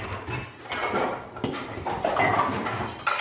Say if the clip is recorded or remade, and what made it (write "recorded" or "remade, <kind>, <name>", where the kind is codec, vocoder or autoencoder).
recorded